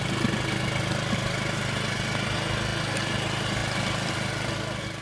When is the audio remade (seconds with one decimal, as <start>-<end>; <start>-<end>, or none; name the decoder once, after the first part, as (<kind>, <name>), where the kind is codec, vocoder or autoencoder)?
3.6-5.0 (vocoder, BigVGAN v2)